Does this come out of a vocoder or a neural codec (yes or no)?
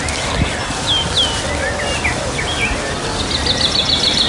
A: no